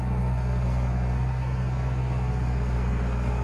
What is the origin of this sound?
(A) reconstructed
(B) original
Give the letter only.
A